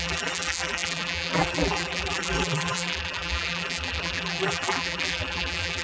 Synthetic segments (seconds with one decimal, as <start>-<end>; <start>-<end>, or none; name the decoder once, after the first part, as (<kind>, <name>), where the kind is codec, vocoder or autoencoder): 0.0-5.8 (vocoder, BigVGAN v2)